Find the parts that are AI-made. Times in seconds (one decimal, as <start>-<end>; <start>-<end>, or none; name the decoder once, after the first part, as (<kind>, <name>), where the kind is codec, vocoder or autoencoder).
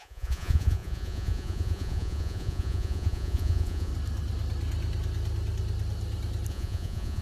0.0-3.9 (vocoder, Vocos); 6.5-7.2